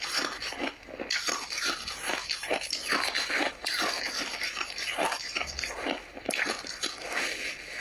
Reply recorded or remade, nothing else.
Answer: recorded